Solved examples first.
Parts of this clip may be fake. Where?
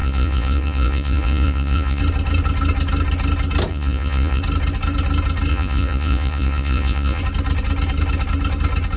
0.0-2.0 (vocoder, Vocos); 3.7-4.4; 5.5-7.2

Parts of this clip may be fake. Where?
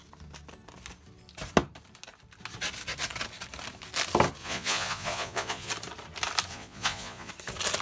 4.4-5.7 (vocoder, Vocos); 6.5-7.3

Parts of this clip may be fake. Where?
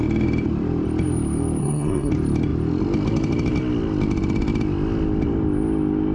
1.6-2.1 (codec, SNAC)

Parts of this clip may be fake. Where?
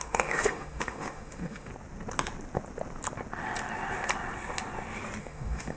0.0-1.7 (autoencoder, DAC-VAE); 5.2-5.8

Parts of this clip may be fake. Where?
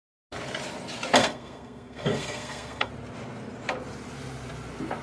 1.2-2.9 (codec, SNAC)